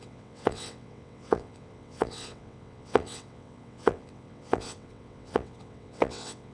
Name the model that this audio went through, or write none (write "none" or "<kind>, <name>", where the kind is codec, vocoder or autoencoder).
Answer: vocoder, WaveNeXt